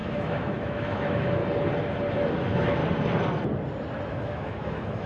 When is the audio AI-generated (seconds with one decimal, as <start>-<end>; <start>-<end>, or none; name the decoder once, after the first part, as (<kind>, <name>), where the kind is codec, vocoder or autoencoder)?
0.0-1.4 (autoencoder, DAC-VAE); 2.1-2.8; 4.1-5.1